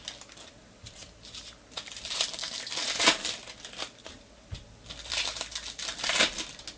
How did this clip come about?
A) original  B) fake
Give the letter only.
A